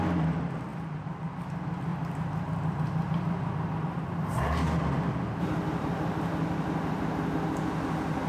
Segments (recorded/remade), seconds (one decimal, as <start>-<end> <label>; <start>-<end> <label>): 0.0-0.7 recorded; 0.7-1.4 remade; 1.4-1.9 recorded; 1.9-3.5 remade; 3.5-4.8 recorded; 4.8-7.0 remade; 7.0-8.3 recorded